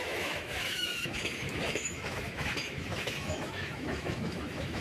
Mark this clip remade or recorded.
remade